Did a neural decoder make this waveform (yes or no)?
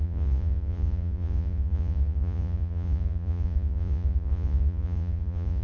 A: yes